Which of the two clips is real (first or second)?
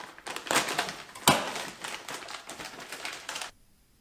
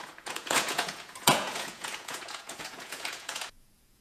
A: first